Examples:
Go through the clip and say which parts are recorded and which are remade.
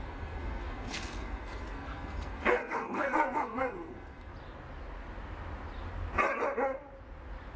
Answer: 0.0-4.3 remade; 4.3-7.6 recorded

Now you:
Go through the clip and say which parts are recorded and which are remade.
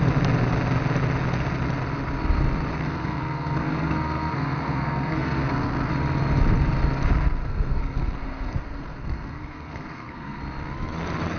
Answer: 0.0-2.7 recorded; 2.7-5.9 remade; 5.9-7.4 recorded; 7.4-10.4 remade; 10.4-11.4 recorded